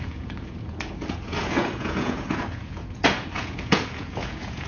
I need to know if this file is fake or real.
fake